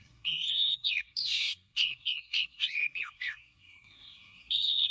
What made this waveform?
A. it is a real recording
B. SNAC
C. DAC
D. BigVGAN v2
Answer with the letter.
B